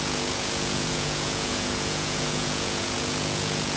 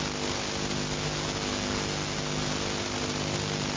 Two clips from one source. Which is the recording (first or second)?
second